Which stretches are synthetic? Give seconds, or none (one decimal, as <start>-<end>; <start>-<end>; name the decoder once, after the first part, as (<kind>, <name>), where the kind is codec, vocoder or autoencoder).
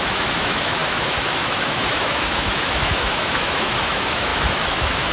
0.0-5.1 (autoencoder, DAC-VAE)